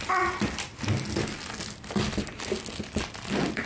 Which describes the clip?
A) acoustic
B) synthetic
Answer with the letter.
A